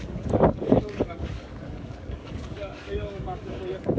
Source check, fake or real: fake